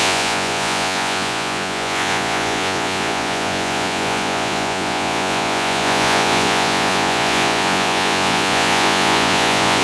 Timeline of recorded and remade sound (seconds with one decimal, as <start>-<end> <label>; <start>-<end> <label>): 0.0-9.8 remade